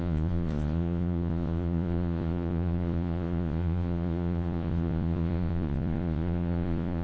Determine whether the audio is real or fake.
fake